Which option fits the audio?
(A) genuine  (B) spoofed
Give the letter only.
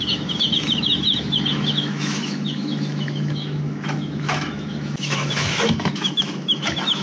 B